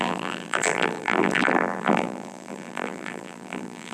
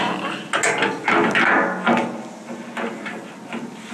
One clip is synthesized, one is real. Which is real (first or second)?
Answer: second